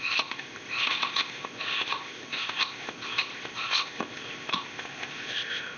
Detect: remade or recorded remade